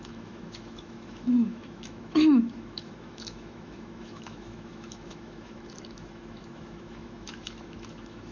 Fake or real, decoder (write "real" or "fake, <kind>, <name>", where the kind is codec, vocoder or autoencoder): fake, autoencoder, DAC-VAE